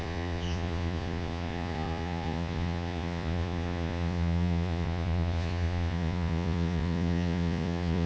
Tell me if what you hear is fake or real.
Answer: fake